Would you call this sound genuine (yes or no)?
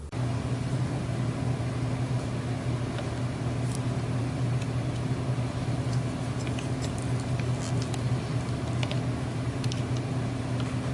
yes